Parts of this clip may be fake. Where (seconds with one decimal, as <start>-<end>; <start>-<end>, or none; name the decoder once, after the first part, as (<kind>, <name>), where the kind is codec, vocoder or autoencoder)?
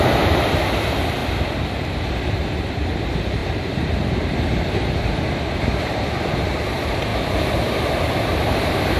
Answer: 0.0-1.2 (vocoder, BigVGAN v2); 1.7-7.1; 7.9-9.0